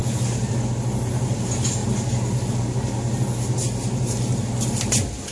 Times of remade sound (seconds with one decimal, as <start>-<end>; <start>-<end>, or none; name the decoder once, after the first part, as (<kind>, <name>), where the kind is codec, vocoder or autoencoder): none